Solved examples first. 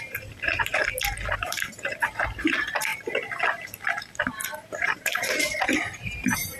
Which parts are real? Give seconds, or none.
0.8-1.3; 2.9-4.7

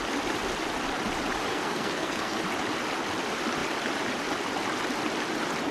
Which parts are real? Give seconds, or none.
0.0-1.5; 2.4-5.7